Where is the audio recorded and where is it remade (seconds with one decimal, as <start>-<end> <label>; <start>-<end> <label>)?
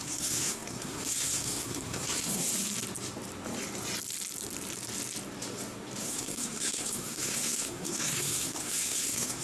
0.0-2.5 remade; 2.5-6.0 recorded; 6.0-9.4 remade